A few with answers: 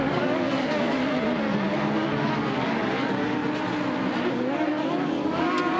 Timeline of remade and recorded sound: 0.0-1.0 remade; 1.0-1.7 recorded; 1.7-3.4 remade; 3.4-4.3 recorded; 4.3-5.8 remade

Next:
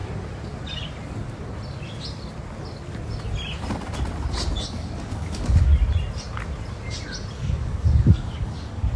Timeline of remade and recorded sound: 0.0-4.6 recorded; 4.6-5.7 remade; 5.7-7.3 recorded; 7.3-9.0 remade

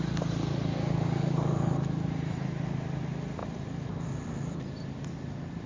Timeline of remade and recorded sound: 0.0-0.7 recorded; 0.7-1.7 remade; 1.7-5.7 recorded

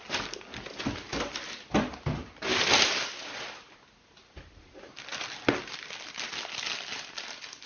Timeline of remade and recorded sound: 0.0-7.7 recorded

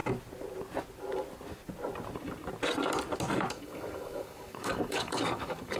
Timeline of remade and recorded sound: 0.0-3.5 recorded; 3.5-5.8 remade

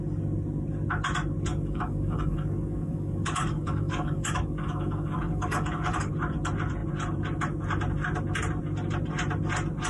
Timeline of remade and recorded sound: 0.0-1.5 recorded; 1.5-6.1 remade; 6.1-9.9 recorded

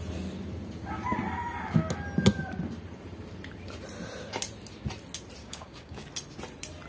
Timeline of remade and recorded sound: 0.0-5.4 recorded; 5.4-6.1 remade; 6.1-6.9 recorded

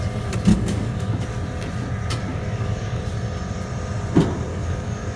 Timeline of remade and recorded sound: 0.0-0.5 recorded; 0.5-1.2 remade; 1.2-2.3 recorded; 2.3-3.0 remade; 3.0-4.5 recorded; 4.5-5.2 remade